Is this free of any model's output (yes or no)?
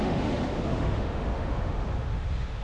no